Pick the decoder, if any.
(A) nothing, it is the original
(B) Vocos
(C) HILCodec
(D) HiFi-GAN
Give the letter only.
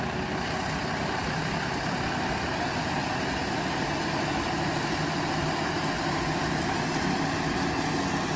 A